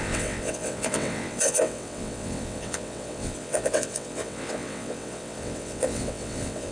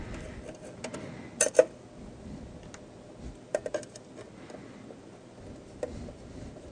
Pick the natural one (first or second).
second